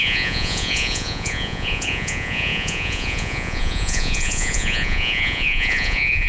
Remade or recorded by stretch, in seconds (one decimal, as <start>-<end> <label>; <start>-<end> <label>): 0.0-6.3 remade

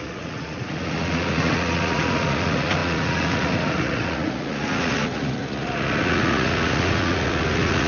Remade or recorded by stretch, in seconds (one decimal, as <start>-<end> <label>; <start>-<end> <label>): 0.0-7.9 remade